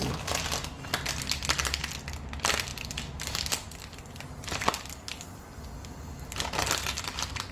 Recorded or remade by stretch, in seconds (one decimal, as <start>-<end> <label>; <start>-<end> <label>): 0.0-7.5 recorded